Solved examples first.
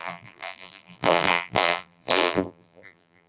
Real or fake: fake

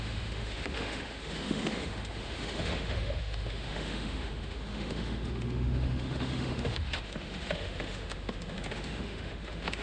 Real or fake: fake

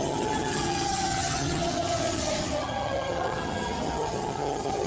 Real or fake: fake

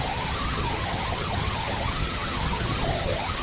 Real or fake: fake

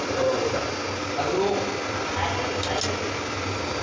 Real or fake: real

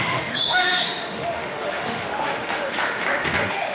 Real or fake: fake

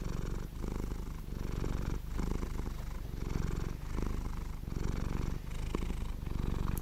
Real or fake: real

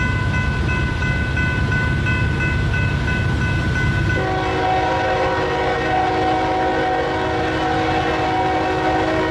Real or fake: real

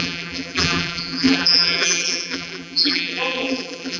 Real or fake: fake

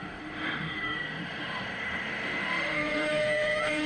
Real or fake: fake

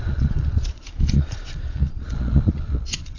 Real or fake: fake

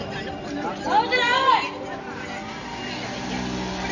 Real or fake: real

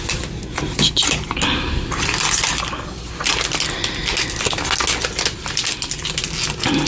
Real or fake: real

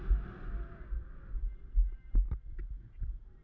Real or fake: real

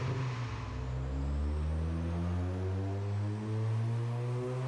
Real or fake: real